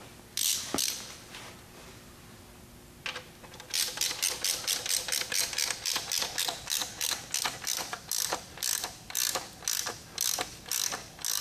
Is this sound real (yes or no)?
yes